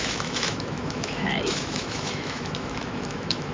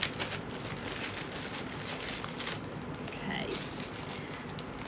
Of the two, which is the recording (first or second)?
second